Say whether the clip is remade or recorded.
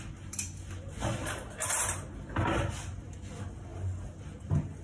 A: recorded